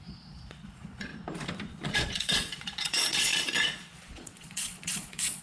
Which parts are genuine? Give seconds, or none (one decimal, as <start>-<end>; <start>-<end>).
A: 1.1-1.9